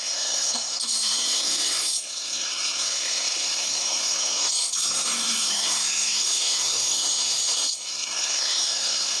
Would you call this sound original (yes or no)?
no